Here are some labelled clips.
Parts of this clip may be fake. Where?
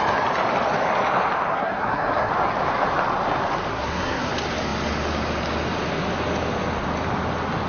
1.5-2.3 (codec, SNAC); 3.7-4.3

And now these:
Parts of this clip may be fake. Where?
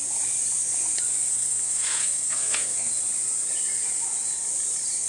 1.3-2.9 (codec, SNAC)